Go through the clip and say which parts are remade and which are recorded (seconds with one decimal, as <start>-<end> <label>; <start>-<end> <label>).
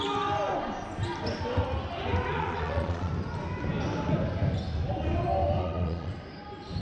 0.0-2.3 recorded; 2.3-3.1 remade; 3.1-5.6 recorded; 5.6-6.1 remade; 6.1-6.8 recorded